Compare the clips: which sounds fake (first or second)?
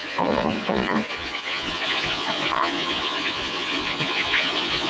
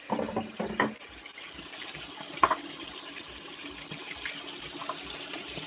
first